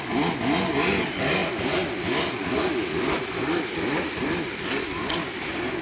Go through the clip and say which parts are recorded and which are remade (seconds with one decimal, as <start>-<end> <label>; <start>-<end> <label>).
0.0-5.8 recorded

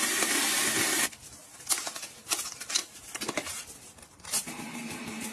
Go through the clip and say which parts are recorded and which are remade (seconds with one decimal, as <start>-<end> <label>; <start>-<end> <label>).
0.0-1.8 recorded; 1.8-5.3 remade

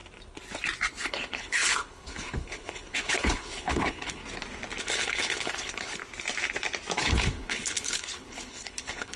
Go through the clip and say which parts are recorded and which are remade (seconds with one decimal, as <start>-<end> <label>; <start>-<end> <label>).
0.0-1.0 recorded; 1.0-4.2 remade; 4.2-4.8 recorded; 4.8-6.0 remade; 6.0-7.0 recorded; 7.0-9.2 remade

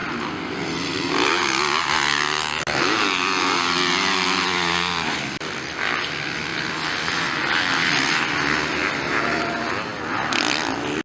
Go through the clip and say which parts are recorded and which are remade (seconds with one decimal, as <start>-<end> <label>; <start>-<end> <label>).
0.0-11.0 recorded